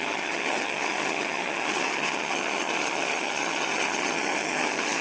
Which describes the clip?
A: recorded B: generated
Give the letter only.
B